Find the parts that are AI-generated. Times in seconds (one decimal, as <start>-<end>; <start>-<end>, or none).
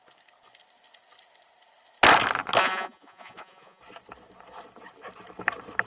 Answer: 2.6-3.8